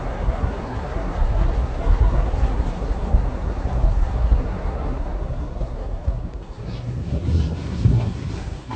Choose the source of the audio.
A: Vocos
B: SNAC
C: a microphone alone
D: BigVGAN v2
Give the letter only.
B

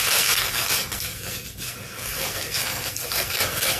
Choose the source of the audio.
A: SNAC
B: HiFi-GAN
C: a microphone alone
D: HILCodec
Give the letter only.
A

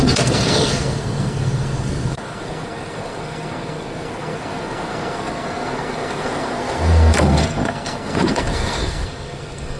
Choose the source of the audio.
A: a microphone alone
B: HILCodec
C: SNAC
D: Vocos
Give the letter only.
C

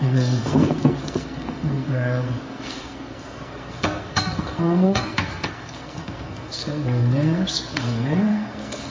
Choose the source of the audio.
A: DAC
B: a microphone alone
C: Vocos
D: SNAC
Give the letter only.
D